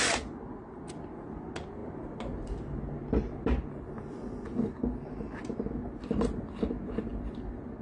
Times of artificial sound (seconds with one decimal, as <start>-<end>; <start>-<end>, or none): none

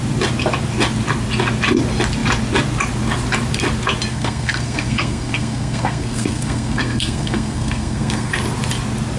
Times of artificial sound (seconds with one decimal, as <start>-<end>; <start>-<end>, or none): 4.1-8.3

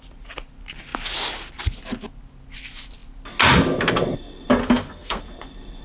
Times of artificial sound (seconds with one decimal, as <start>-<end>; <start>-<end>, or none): 4.6-5.2

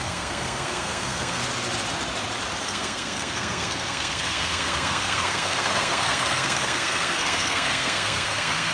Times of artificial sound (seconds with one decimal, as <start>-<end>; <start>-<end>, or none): 0.0-1.4; 2.6-8.7

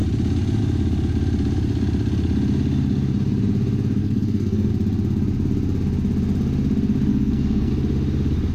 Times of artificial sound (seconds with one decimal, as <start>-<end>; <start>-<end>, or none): 4.0-4.7; 7.1-7.7

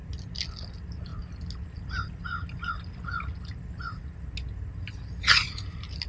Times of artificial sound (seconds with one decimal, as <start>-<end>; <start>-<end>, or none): none